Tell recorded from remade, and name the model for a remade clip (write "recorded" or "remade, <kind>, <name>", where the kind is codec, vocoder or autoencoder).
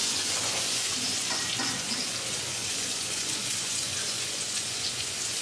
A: remade, vocoder, Vocos